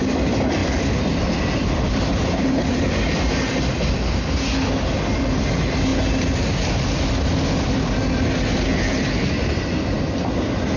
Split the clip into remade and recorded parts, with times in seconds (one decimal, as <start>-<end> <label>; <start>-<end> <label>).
0.0-0.6 recorded; 0.6-3.9 remade; 3.9-10.8 recorded